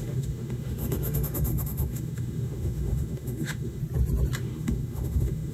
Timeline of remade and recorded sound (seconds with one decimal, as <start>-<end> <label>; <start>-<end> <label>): 0.0-3.8 remade; 3.8-4.4 recorded; 4.4-5.5 remade